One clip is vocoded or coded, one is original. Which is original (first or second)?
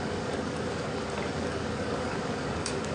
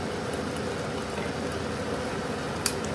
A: second